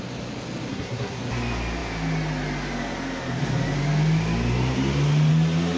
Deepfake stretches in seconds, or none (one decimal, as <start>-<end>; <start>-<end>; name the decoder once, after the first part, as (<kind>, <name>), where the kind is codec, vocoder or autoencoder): 0.7-1.2 (codec, SNAC)